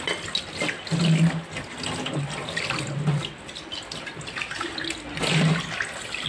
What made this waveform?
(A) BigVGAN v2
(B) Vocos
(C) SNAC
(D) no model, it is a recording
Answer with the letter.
D